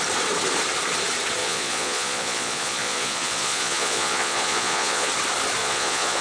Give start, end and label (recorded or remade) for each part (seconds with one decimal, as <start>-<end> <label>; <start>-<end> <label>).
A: 0.0-1.4 recorded; 1.4-5.1 remade; 5.1-5.6 recorded; 5.6-6.2 remade